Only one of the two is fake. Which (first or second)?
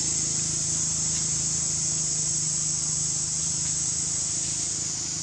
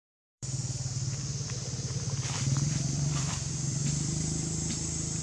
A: second